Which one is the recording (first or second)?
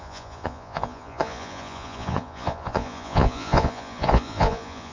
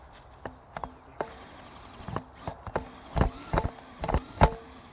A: second